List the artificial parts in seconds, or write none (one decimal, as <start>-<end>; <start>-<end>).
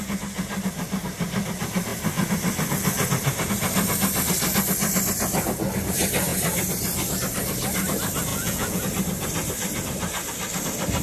8.3-8.8